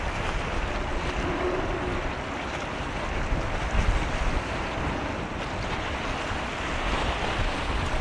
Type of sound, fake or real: real